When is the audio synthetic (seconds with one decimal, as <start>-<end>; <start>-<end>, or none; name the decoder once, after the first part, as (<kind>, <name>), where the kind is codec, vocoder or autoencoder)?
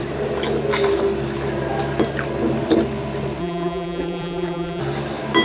3.4-4.8 (vocoder, BigVGAN v2)